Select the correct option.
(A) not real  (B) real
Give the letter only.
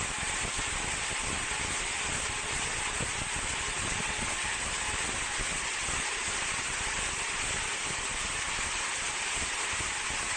B